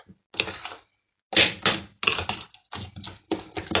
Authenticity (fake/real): real